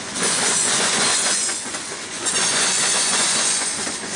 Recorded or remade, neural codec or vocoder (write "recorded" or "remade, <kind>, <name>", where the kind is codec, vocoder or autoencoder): remade, vocoder, Vocos